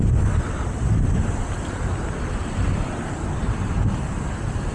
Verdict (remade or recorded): recorded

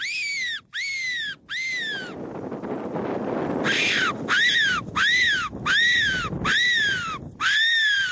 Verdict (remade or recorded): recorded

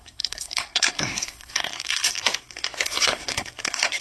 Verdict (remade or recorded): remade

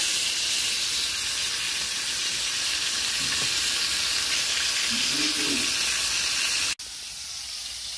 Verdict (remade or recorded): recorded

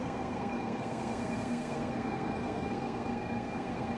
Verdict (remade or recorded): remade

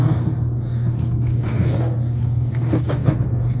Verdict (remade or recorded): remade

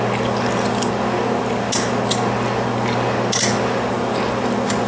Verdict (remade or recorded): recorded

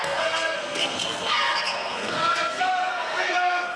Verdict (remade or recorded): remade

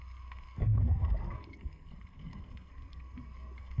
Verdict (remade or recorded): remade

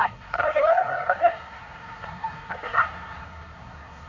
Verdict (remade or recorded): remade